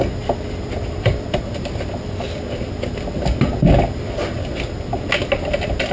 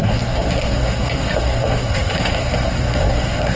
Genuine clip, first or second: first